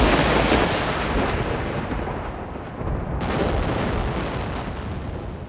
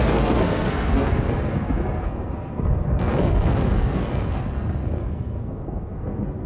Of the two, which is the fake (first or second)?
second